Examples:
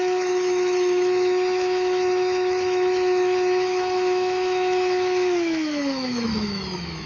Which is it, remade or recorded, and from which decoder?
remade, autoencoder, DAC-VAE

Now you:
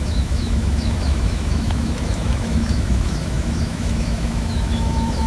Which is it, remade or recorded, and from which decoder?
remade, autoencoder, DAC-VAE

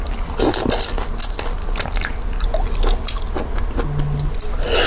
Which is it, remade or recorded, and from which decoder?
recorded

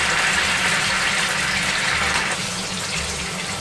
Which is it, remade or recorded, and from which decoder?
recorded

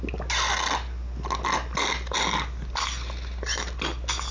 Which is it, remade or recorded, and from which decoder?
recorded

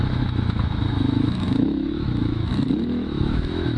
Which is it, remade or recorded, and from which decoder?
remade, autoencoder, DAC-VAE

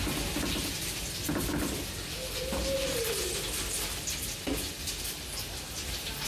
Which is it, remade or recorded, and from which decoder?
recorded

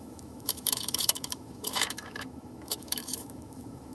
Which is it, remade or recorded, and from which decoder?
remade, autoencoder, DAC-VAE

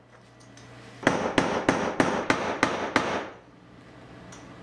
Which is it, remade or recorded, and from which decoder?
recorded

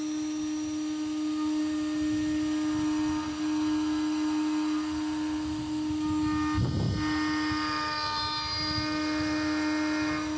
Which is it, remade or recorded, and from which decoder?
recorded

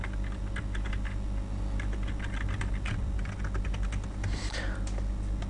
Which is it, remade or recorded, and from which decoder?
recorded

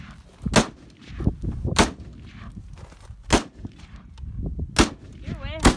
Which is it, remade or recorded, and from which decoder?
recorded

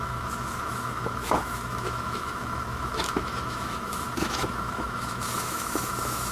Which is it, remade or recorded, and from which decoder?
remade, autoencoder, DAC-VAE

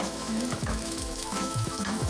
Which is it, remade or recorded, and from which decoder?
remade, autoencoder, DAC-VAE